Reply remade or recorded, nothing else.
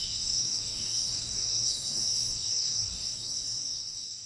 remade